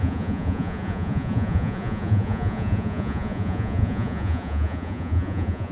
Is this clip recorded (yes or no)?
no